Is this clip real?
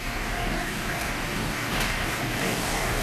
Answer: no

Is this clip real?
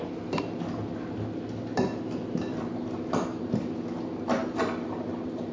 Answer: yes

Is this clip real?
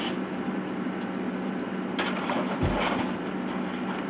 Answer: yes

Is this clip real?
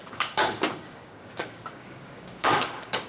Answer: no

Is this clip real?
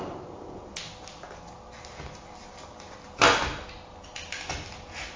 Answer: yes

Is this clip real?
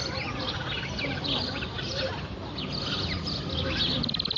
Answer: yes